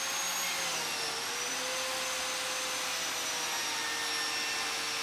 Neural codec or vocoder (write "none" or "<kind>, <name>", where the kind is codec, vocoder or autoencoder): none